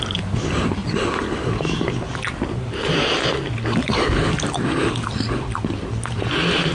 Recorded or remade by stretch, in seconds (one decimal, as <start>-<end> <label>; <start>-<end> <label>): 0.0-6.7 recorded